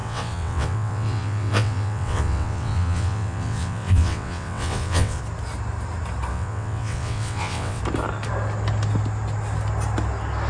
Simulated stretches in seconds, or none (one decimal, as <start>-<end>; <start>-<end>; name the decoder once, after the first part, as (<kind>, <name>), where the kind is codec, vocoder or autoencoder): 0.0-5.2 (vocoder, WaveNeXt); 6.3-7.8